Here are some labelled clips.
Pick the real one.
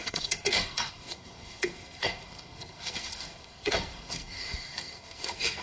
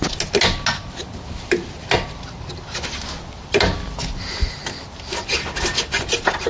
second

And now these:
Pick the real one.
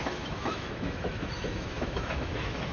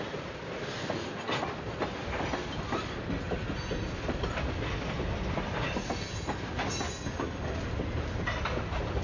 second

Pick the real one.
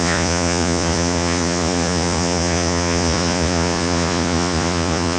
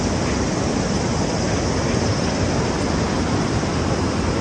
second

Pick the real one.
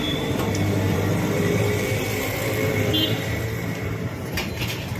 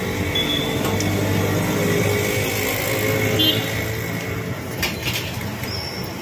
second